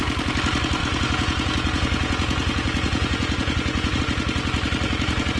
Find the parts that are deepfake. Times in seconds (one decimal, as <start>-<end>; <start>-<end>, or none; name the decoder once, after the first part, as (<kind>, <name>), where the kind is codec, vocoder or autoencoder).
0.8-4.0 (vocoder, Vocos)